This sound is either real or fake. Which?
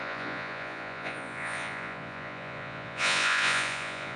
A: fake